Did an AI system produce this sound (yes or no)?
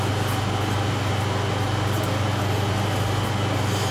no